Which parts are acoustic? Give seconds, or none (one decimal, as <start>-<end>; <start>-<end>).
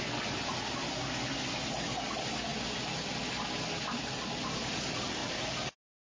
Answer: 0.0-5.2